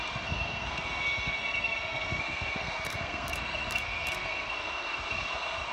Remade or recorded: remade